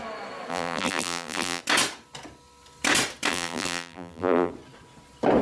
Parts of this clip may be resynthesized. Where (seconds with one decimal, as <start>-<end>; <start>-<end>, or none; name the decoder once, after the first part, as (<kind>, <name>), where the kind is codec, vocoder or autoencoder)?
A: 0.5-1.6 (vocoder, BigVGAN v2); 3.3-4.5